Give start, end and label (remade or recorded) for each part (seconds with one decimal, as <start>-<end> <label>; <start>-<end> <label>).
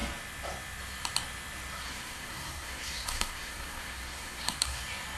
0.0-1.8 recorded; 1.8-4.8 remade; 4.8-5.2 recorded